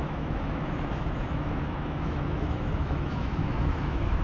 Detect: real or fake fake